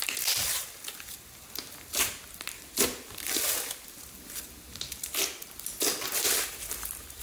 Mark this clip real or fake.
real